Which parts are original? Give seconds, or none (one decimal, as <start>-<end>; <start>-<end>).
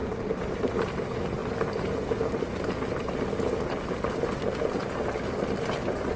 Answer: 0.0-6.2